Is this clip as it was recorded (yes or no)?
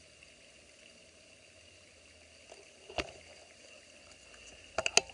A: yes